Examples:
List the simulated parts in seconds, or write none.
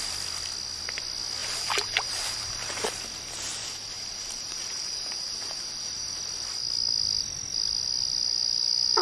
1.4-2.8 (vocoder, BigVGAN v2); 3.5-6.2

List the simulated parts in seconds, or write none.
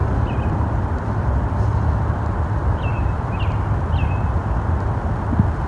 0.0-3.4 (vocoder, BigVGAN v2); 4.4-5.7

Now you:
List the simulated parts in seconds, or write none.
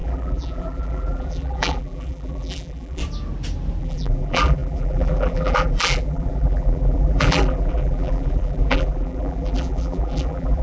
0.0-3.0 (vocoder, BigVGAN v2); 3.8-10.6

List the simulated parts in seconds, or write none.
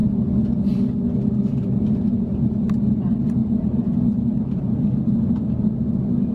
none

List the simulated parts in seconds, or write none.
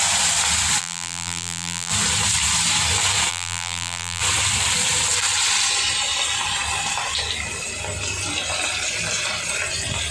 0.8-1.9 (vocoder, BigVGAN v2); 3.3-4.2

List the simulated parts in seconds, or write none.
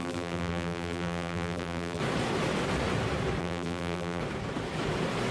0.0-2.0 (vocoder, BigVGAN v2); 3.4-4.2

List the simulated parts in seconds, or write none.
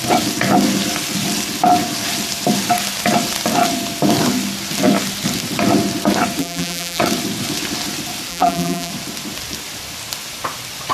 6.4-7.0 (vocoder, BigVGAN v2); 8.3-8.9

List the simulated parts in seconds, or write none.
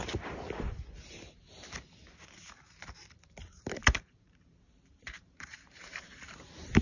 3.4-6.8 (vocoder, BigVGAN v2)